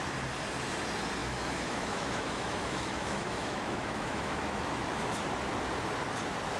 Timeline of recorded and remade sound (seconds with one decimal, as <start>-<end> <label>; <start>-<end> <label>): 0.0-1.2 recorded; 1.2-5.2 remade; 5.2-6.6 recorded